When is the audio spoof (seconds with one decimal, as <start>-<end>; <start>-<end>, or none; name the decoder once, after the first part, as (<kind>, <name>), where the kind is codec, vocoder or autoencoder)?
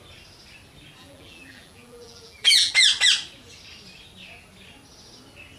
1.0-2.7 (vocoder, BigVGAN v2)